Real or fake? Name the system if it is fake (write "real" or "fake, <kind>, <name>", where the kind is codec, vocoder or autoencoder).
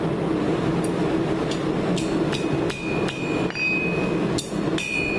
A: real